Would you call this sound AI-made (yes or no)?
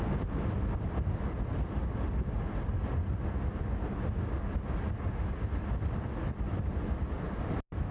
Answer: no